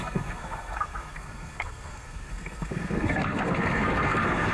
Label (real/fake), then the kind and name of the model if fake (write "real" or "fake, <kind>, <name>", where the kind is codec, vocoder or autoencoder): fake, codec, SNAC